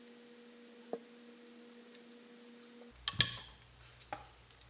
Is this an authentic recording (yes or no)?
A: yes